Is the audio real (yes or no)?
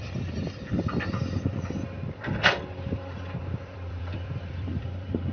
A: no